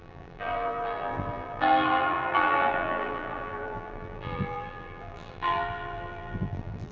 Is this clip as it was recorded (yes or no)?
no